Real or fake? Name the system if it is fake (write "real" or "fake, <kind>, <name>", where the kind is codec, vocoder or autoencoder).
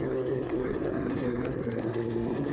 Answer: fake, codec, SNAC